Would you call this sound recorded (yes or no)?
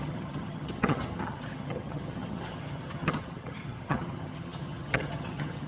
no